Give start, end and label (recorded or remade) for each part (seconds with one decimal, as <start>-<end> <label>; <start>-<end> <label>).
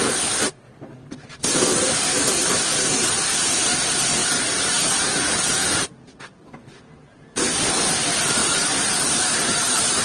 0.0-8.4 recorded; 8.4-10.0 remade